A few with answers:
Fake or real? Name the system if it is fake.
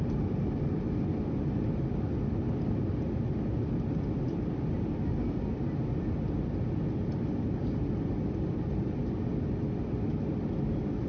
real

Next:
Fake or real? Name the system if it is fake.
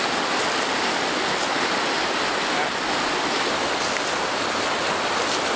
real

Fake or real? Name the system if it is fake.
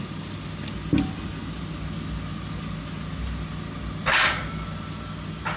real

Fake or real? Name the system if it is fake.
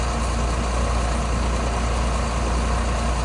real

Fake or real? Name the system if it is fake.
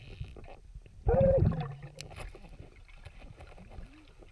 real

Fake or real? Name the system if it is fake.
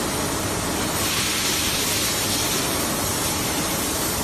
real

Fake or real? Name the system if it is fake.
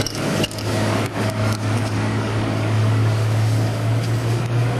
fake, codec, DAC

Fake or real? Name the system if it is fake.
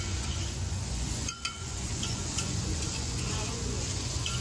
fake, vocoder, Vocos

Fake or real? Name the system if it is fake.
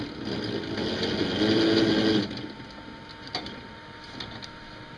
real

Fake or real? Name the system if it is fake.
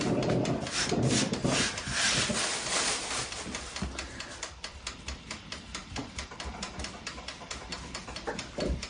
fake, vocoder, BigVGAN v2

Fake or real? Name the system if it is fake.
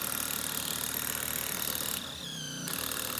real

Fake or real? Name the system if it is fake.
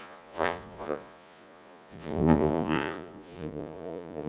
fake, vocoder, Vocos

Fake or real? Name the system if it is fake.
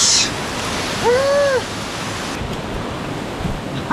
real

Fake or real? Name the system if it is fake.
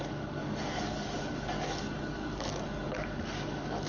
fake, codec, DAC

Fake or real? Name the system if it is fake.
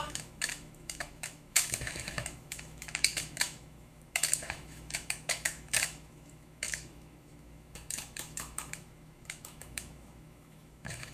fake, autoencoder, DAC-VAE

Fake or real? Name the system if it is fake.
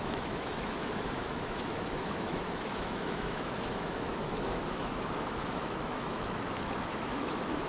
fake, autoencoder, DAC-VAE